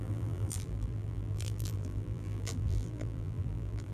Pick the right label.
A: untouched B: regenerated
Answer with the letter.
B